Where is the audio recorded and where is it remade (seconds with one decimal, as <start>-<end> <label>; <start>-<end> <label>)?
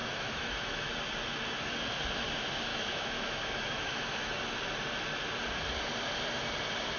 0.0-0.9 remade; 0.9-2.7 recorded; 2.7-4.3 remade; 4.3-7.0 recorded